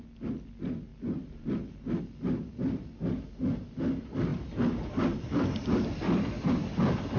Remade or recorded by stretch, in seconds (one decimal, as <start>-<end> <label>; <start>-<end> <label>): 0.0-4.3 recorded; 4.3-6.5 remade; 6.5-7.2 recorded